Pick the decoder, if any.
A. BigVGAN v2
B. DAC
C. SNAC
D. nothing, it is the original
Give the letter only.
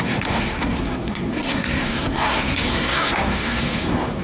C